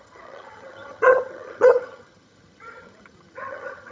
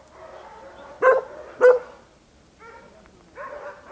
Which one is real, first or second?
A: second